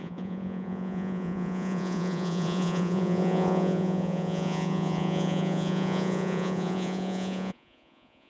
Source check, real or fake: fake